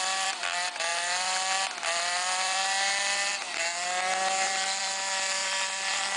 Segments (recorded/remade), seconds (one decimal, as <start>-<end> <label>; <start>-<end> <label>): 0.0-6.2 remade